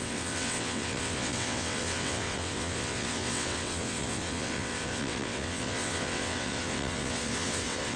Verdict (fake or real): fake